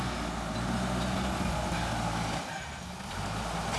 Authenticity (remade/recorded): recorded